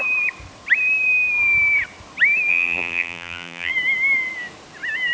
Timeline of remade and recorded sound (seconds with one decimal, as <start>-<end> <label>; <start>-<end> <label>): 0.0-2.5 recorded; 2.5-3.7 remade; 3.7-5.1 recorded